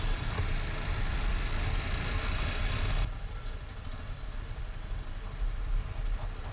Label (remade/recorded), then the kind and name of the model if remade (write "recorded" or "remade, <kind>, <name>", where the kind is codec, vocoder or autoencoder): recorded